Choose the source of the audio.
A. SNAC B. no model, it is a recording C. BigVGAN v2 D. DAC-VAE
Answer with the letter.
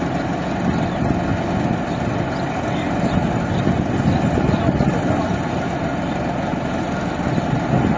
B